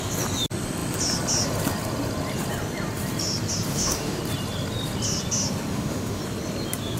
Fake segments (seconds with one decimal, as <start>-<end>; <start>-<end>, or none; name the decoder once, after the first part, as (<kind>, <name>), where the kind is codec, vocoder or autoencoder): 3.7-4.2 (autoencoder, DAC-VAE); 5.7-6.2